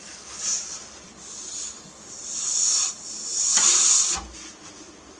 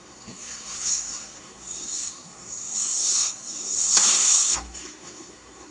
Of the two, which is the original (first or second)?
first